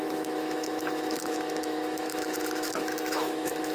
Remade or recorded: remade